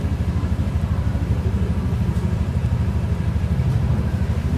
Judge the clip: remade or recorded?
remade